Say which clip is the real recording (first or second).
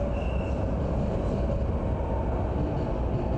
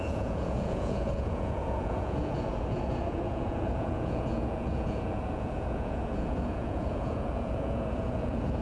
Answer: first